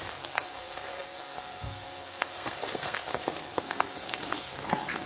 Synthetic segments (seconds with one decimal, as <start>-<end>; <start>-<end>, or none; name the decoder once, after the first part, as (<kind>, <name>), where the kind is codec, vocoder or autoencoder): 0.0-5.1 (codec, SNAC)